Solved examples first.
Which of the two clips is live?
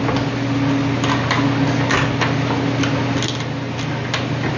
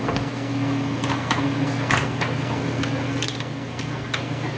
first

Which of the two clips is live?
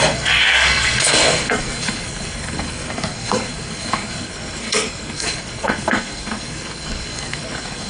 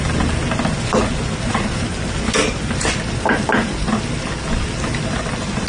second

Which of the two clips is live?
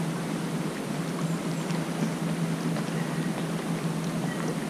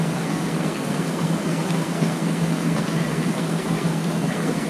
first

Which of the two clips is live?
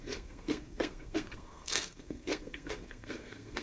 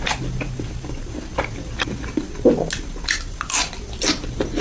second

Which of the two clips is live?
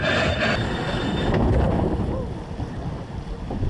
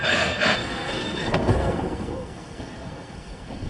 first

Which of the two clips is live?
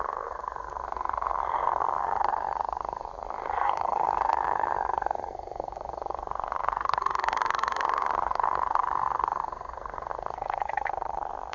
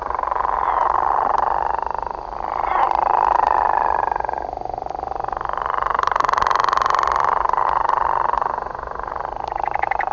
second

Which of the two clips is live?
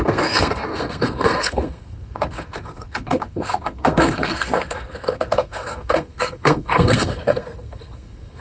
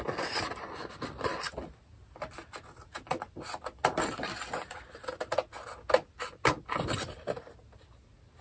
second